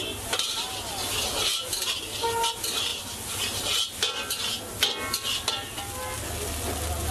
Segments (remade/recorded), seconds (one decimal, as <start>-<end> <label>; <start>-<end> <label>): 0.0-7.1 recorded